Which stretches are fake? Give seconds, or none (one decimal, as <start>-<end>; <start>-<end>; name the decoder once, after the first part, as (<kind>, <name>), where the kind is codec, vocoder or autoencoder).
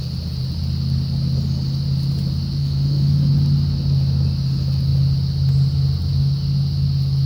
2.6-3.3 (autoencoder, DAC-VAE)